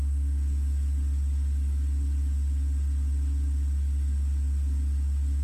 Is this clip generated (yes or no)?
no